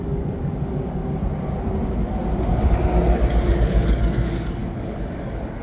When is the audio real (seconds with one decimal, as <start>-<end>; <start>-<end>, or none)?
1.2-3.5